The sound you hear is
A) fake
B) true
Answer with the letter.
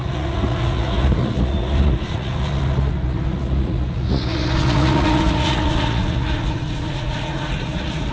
A